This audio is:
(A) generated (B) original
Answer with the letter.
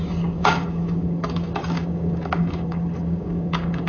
A